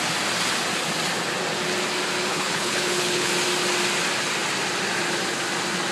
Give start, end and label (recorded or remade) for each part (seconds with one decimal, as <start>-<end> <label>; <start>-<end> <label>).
0.0-2.3 recorded; 2.3-3.3 remade; 3.3-5.9 recorded